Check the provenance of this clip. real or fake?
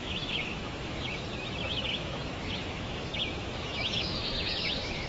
fake